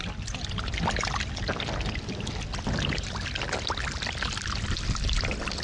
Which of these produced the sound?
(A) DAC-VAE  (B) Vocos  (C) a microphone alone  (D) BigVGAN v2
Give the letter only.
C